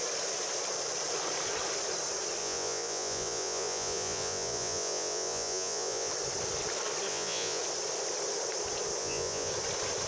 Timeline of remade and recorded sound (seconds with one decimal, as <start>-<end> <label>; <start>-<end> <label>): 0.0-2.4 recorded; 2.4-6.1 remade; 6.1-7.1 recorded; 7.1-7.6 remade; 7.6-9.0 recorded; 9.0-9.5 remade; 9.5-10.1 recorded